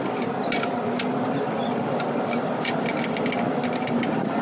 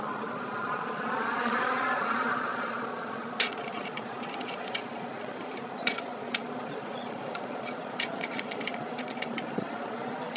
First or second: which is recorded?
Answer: first